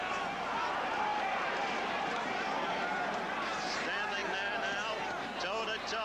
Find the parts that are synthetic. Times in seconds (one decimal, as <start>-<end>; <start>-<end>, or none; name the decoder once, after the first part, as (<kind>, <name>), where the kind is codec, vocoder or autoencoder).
1.1-2.5 (vocoder, BigVGAN v2)